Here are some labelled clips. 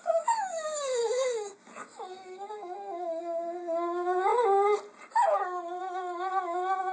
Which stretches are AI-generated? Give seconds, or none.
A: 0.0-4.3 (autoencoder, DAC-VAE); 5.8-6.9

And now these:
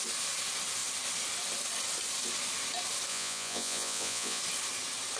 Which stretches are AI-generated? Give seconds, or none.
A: 3.1-4.4 (vocoder, Vocos)

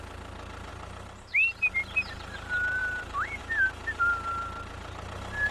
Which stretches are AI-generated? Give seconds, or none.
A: 2.8-3.4 (vocoder, BigVGAN v2)